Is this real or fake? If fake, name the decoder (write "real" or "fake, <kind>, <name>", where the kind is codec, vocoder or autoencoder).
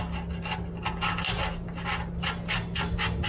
real